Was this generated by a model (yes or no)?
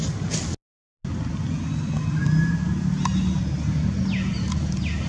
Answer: no